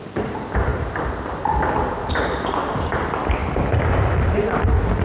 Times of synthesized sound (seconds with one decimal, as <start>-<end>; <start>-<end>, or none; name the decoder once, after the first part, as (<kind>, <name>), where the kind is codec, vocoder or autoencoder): none